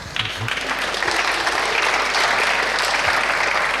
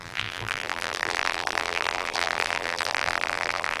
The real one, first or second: first